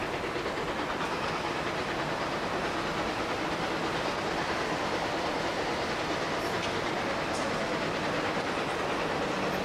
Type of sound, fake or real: real